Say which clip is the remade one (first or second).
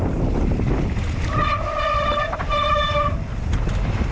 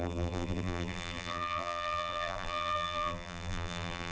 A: second